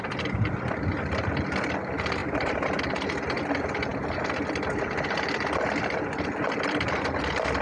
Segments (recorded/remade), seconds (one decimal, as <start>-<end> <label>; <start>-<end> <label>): 0.0-2.2 recorded; 2.2-2.8 remade; 2.8-7.6 recorded